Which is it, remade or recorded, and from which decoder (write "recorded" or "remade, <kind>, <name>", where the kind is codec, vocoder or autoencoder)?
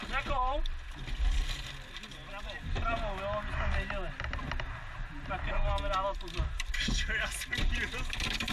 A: recorded